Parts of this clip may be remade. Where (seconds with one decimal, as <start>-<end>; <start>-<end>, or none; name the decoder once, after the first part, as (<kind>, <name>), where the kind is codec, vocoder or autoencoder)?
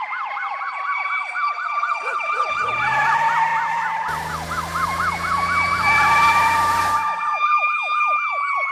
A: 1.2-3.1 (vocoder, BigVGAN v2); 3.5-4.3; 7.4-8.0